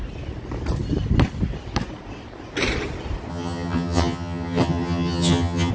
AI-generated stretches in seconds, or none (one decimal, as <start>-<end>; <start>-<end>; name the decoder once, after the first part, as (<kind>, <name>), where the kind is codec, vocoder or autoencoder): 3.3-5.7 (vocoder, HiFi-GAN)